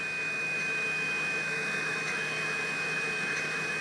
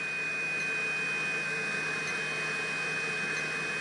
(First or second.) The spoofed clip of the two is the first